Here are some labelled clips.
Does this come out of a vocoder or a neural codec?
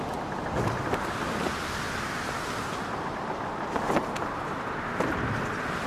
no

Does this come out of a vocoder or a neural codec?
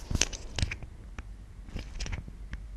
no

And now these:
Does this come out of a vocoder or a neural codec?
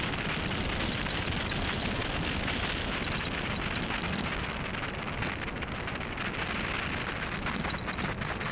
no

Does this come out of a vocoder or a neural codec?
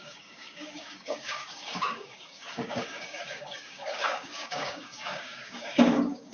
yes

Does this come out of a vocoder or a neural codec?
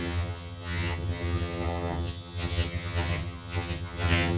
yes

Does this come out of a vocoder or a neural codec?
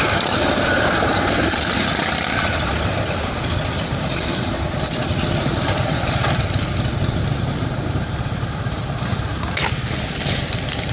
yes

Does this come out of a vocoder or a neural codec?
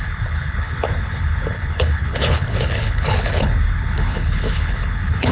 yes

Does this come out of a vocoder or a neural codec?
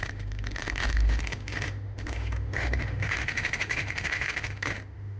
yes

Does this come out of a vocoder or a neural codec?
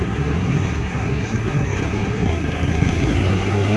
yes